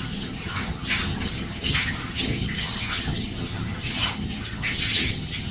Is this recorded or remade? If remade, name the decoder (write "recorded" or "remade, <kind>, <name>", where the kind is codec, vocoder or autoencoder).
remade, vocoder, HiFi-GAN